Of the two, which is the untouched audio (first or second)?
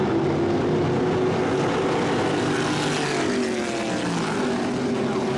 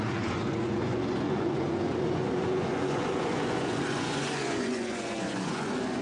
first